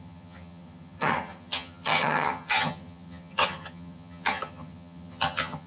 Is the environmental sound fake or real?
fake